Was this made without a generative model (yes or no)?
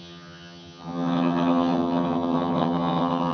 no